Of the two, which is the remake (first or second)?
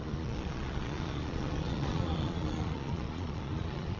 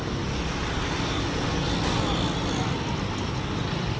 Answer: first